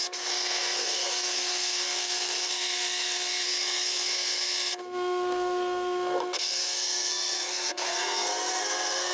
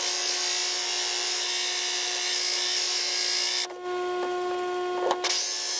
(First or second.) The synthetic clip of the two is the first